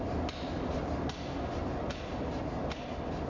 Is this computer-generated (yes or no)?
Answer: no